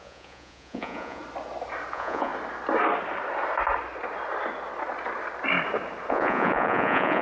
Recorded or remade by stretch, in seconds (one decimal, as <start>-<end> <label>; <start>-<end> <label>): 0.0-1.2 remade; 1.2-1.9 recorded; 1.9-2.3 remade; 2.3-6.1 recorded; 6.1-7.2 remade